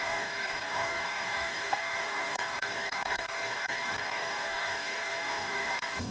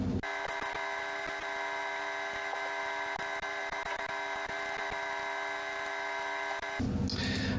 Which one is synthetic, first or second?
first